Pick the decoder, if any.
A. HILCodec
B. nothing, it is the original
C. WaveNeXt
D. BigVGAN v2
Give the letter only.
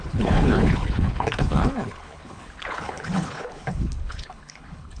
A